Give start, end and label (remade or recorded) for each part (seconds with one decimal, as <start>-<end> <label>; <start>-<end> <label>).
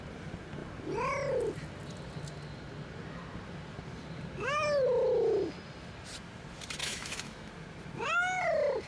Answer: 0.0-6.8 recorded; 6.8-7.5 remade; 7.5-8.9 recorded